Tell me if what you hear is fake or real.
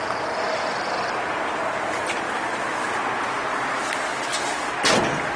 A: real